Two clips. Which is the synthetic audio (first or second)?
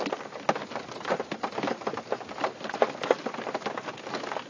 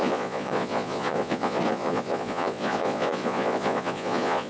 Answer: second